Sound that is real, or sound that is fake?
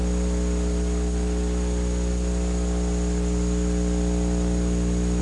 real